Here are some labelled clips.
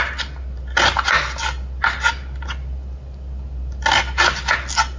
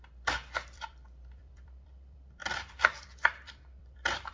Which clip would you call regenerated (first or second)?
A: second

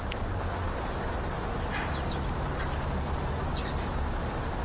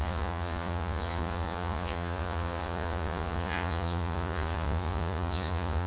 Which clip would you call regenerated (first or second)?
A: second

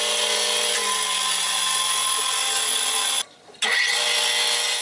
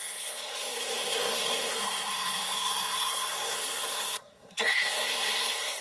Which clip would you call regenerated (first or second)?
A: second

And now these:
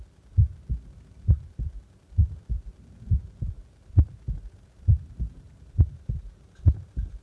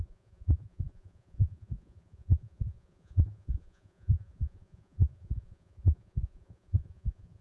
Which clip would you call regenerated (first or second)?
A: second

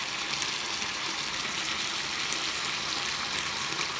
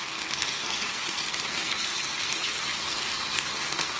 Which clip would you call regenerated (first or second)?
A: second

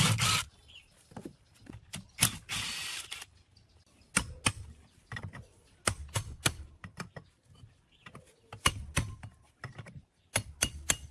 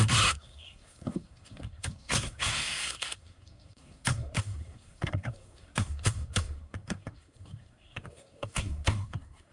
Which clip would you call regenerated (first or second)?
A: second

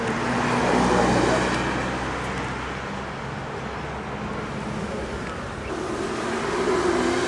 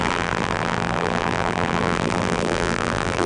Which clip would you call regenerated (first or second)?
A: second